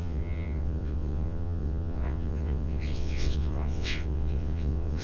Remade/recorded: remade